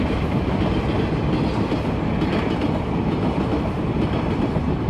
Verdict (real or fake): real